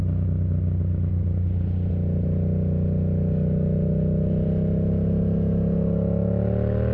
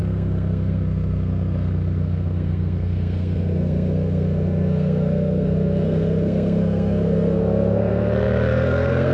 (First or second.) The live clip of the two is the first